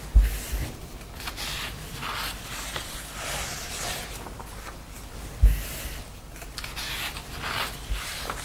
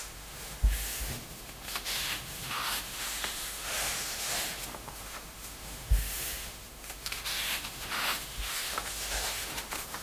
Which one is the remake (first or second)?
second